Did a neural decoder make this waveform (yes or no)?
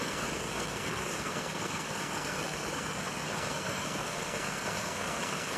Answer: yes